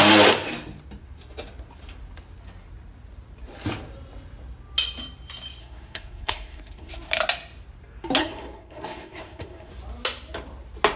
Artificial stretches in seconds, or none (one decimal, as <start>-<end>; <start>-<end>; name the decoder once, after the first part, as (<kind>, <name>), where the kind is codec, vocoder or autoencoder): 5.6-6.9 (codec, SNAC); 8.2-9.7